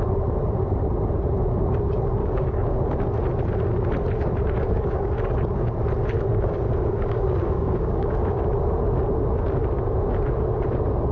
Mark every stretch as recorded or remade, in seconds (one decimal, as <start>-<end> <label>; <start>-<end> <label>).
0.0-2.2 recorded; 2.2-2.8 remade; 2.8-4.6 recorded; 4.6-5.1 remade; 5.1-6.3 recorded; 6.3-8.4 remade; 8.4-11.1 recorded